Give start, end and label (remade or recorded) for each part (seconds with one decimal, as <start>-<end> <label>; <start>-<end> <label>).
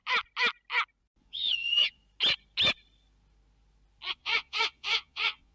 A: 0.0-1.2 recorded; 1.2-2.0 remade; 2.0-4.1 recorded; 4.1-5.5 remade